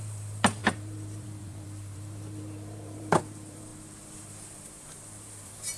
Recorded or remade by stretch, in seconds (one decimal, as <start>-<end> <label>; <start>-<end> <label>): 0.0-5.8 remade